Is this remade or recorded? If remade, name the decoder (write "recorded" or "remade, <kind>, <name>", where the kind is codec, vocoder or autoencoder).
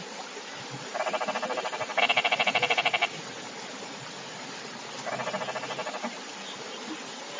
recorded